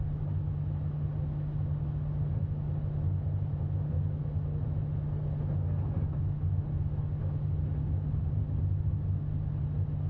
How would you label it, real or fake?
real